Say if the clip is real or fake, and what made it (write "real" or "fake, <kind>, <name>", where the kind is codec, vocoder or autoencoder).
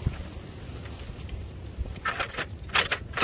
real